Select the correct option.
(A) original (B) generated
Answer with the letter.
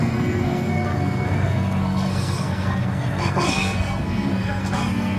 B